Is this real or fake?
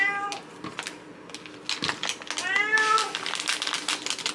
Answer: real